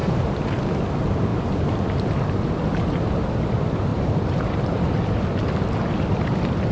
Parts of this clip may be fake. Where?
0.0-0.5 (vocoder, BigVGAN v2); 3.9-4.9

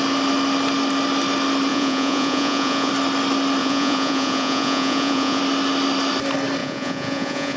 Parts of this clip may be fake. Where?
1.7-2.9 (vocoder, Vocos); 3.6-5.4; 6.6-7.6

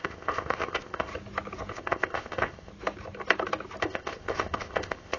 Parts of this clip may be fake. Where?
0.0-1.1 (codec, ZipCodec); 1.7-2.7; 3.8-5.2

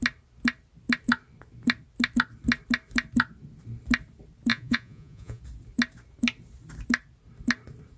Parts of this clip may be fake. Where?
4.5-5.4 (vocoder, Vocos)

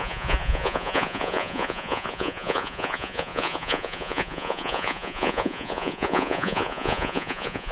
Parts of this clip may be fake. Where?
0.0-7.7 (vocoder, Vocos)

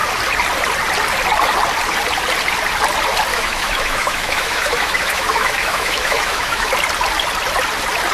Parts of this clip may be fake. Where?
3.3-6.7 (autoencoder, DAC-VAE)

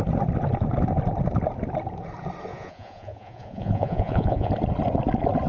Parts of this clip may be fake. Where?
2.5-4.5 (vocoder, Vocos)

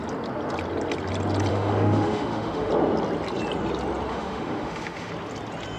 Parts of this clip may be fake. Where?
1.5-2.7 (autoencoder, DAC-VAE); 4.1-5.1